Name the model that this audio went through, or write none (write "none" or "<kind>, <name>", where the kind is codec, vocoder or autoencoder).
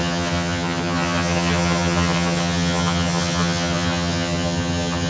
vocoder, HiFi-GAN